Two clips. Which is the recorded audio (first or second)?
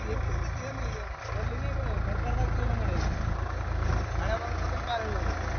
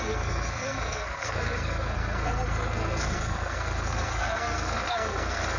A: first